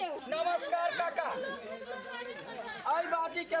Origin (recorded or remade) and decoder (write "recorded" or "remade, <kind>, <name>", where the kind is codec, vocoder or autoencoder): recorded